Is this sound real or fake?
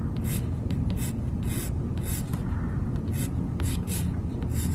real